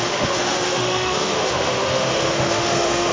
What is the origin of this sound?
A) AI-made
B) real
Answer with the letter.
A